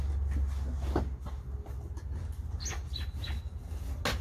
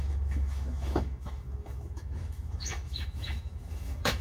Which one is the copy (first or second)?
second